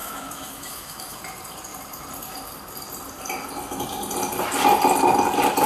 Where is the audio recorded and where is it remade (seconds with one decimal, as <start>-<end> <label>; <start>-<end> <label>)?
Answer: 0.0-1.2 remade; 1.2-5.7 recorded